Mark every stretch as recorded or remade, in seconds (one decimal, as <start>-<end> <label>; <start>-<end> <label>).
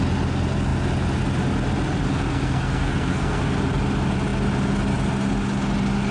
0.0-2.1 recorded; 2.1-3.4 remade; 3.4-6.1 recorded